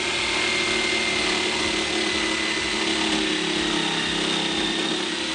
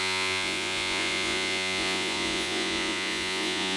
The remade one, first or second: second